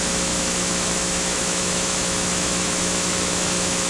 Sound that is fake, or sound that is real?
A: fake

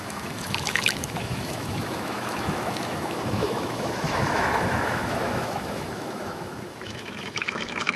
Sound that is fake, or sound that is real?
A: fake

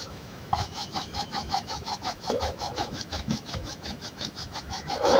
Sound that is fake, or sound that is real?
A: fake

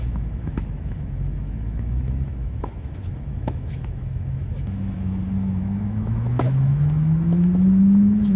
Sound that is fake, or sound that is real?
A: fake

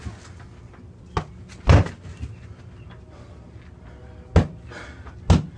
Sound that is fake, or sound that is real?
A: real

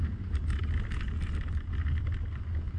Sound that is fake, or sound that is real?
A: real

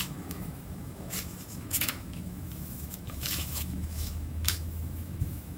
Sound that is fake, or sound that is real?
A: fake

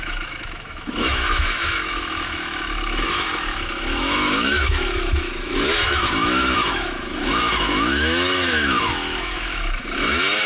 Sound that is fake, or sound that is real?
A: fake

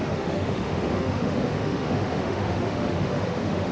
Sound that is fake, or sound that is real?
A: fake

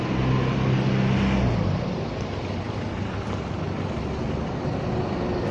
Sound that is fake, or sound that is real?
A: real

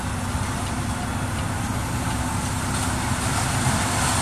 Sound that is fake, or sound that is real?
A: real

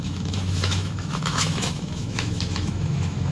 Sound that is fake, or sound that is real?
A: fake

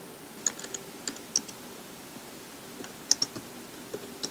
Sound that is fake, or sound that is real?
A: real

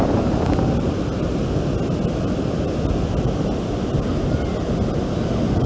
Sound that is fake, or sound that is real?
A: real